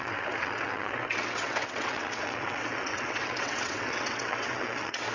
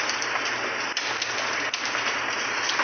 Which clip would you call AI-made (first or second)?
first